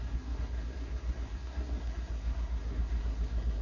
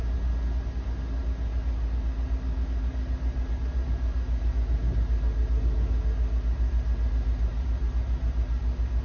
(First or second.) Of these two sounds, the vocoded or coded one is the first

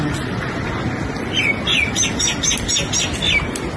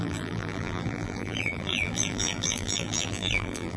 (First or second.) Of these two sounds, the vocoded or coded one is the second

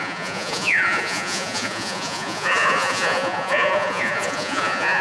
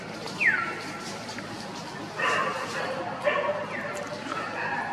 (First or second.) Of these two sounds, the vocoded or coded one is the first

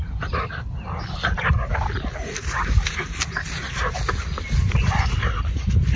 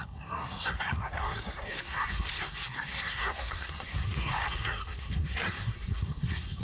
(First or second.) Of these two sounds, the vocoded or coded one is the second